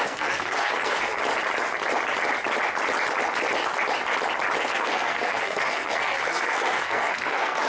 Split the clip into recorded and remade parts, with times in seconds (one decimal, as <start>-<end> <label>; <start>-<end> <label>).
0.0-1.2 remade; 1.2-4.6 recorded; 4.6-7.7 remade